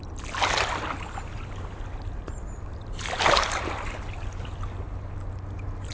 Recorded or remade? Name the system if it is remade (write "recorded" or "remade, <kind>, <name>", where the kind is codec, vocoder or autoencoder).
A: recorded